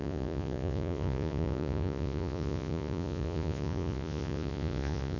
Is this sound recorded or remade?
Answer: remade